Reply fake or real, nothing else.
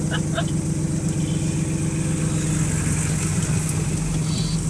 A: real